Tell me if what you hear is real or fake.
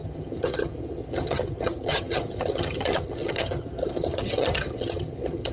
fake